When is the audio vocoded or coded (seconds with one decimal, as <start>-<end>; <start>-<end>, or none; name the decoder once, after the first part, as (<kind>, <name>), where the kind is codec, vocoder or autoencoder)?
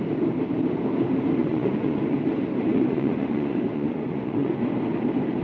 1.4-2.3 (vocoder, Vocos); 2.7-4.7